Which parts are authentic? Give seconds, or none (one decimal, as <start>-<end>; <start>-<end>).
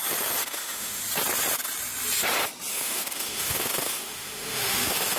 0.0-0.4; 1.0-2.7